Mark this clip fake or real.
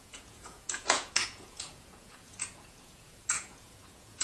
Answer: fake